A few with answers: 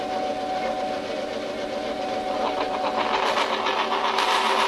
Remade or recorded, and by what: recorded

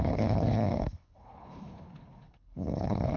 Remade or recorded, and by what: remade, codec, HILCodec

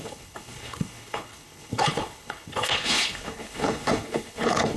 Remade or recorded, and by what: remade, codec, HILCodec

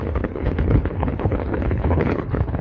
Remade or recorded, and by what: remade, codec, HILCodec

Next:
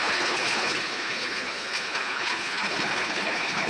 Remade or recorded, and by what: remade, codec, HILCodec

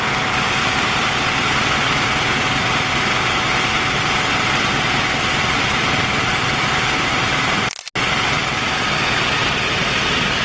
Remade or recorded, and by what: recorded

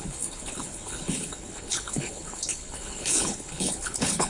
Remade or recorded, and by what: remade, codec, HILCodec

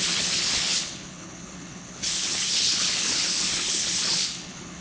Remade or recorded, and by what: remade, codec, HILCodec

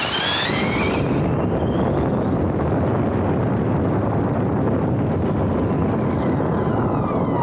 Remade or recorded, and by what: recorded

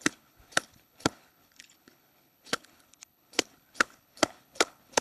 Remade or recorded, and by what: remade, codec, HILCodec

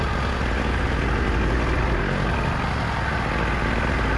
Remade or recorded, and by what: recorded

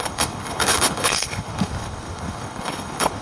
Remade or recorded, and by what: remade, codec, HILCodec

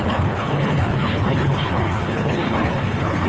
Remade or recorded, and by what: remade, codec, HILCodec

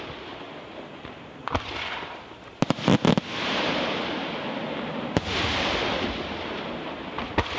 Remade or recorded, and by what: recorded